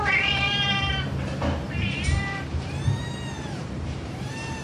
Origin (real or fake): fake